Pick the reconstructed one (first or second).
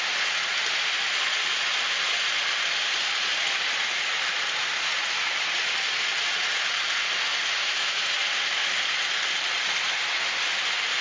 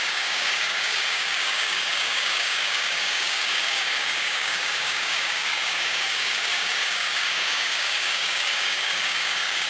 second